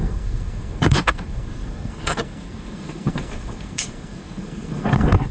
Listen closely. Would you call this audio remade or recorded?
remade